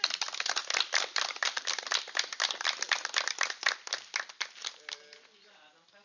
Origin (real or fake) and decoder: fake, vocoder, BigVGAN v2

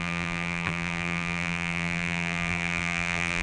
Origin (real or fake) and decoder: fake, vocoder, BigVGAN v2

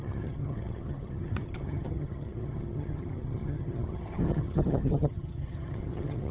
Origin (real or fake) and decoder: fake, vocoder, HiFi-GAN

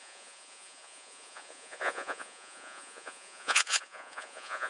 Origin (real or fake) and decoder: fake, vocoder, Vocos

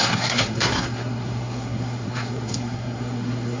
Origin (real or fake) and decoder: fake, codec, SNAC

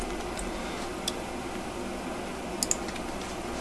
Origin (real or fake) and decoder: real